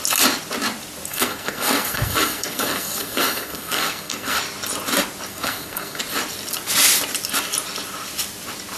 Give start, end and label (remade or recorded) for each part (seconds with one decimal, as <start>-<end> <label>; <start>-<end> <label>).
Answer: 0.0-1.1 recorded; 1.1-4.4 remade; 4.4-5.3 recorded; 5.3-6.0 remade; 6.0-8.8 recorded